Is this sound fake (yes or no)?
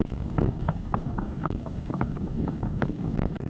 yes